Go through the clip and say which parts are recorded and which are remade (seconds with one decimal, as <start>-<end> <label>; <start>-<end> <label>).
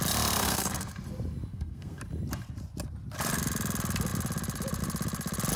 0.0-0.4 recorded; 0.4-0.9 remade; 0.9-1.5 recorded; 1.5-2.0 remade; 2.0-5.6 recorded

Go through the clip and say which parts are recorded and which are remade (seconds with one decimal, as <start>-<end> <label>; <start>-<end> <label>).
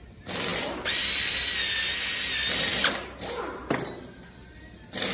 0.0-5.1 recorded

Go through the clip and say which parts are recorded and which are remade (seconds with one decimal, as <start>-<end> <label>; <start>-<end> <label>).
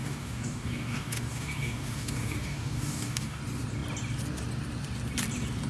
0.0-3.4 remade; 3.4-5.7 recorded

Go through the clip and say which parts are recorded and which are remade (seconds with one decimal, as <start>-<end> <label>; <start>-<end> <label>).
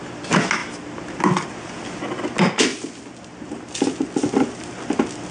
0.0-5.3 recorded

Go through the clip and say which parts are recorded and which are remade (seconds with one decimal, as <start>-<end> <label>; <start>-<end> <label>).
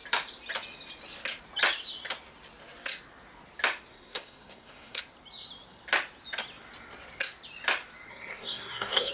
0.0-3.9 recorded; 3.9-5.0 remade; 5.0-8.1 recorded; 8.1-9.1 remade